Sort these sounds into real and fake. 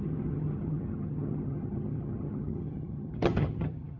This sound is fake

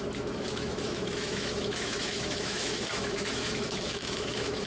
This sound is fake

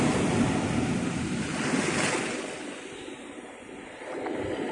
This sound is real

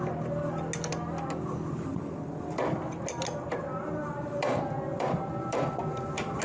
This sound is real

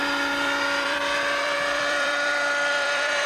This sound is fake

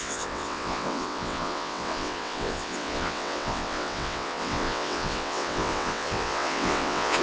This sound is fake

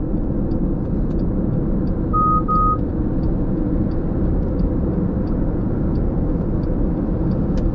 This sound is real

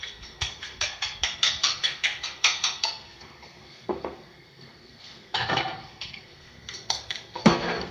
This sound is fake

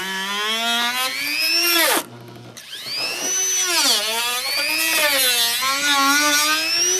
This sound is real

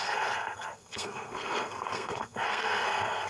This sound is fake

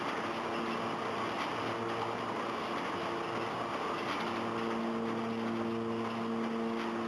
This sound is real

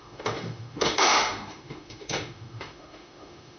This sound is fake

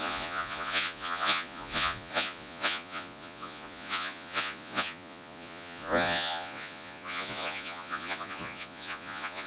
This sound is fake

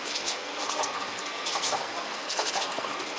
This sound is fake